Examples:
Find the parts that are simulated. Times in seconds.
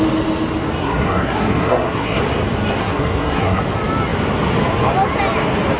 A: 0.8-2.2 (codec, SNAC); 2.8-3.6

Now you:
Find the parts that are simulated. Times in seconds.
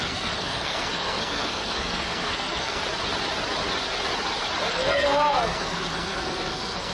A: 0.0-2.8 (codec, SNAC); 4.7-6.9